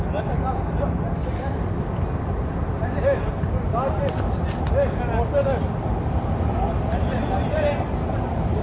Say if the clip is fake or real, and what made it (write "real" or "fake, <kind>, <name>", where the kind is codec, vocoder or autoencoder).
real